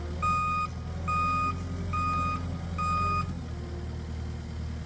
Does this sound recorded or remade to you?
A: recorded